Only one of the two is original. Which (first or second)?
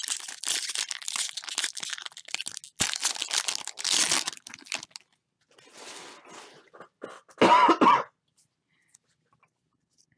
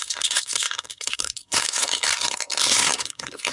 first